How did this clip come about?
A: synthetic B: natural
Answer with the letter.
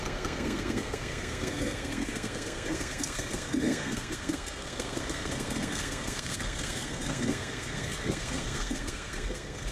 A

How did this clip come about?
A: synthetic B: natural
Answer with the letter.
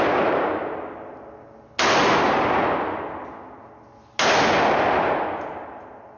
B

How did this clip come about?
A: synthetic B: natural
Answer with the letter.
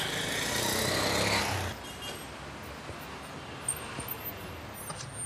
B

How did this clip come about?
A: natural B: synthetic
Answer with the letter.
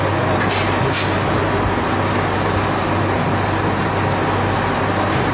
A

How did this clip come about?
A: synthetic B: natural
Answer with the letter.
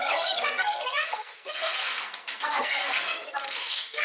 A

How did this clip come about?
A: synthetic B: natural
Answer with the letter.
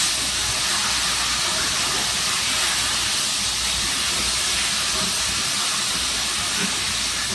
B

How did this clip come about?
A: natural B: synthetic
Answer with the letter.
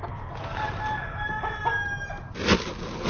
A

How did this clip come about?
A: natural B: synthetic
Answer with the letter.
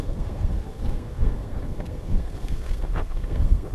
B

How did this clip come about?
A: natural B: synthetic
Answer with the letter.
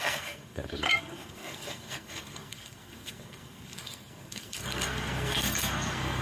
B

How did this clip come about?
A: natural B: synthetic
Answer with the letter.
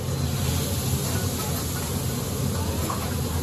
A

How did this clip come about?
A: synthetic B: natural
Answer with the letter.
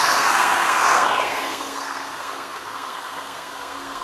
A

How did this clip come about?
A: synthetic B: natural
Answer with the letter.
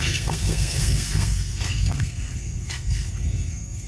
A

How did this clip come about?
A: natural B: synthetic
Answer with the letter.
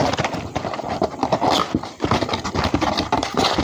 A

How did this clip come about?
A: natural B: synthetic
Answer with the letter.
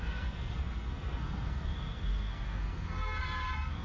B